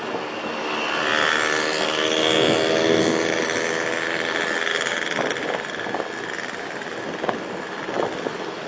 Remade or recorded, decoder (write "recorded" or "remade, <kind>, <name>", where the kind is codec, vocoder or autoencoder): recorded